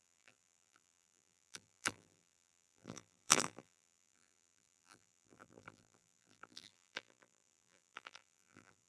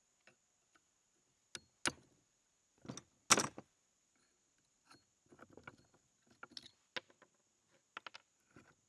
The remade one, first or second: first